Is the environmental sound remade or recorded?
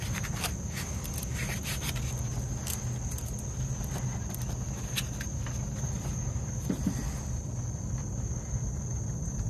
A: recorded